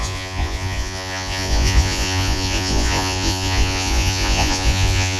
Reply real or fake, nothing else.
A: fake